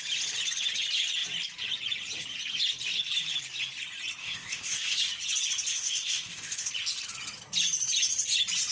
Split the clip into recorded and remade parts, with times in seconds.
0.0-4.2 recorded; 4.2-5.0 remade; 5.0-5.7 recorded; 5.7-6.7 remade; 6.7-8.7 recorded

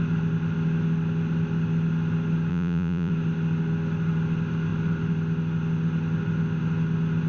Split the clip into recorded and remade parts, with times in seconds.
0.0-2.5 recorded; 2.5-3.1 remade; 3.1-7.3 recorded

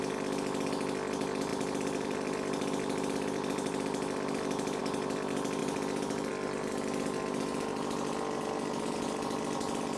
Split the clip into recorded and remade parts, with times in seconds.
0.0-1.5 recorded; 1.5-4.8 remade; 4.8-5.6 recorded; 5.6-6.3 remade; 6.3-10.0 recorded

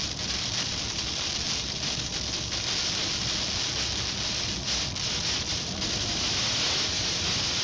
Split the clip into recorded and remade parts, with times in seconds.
0.0-4.6 remade; 4.6-7.6 recorded

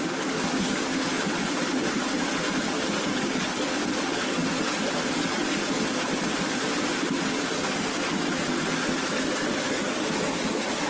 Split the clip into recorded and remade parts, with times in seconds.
0.0-0.9 remade; 0.9-3.2 recorded; 3.2-4.4 remade; 4.4-9.5 recorded; 9.5-10.9 remade

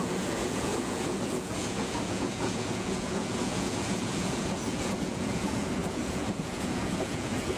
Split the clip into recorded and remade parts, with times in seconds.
0.0-7.6 remade